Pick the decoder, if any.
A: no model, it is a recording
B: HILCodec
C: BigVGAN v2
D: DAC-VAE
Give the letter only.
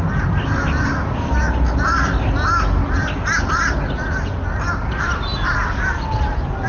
A